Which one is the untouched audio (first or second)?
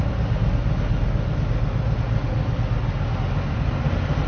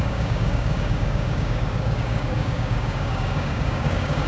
first